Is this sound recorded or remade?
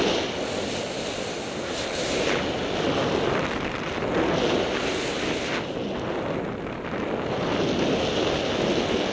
recorded